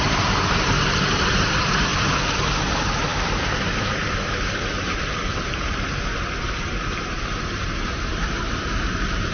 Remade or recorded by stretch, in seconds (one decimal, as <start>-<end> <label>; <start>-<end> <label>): 0.0-1.9 remade; 1.9-2.7 recorded; 2.7-9.3 remade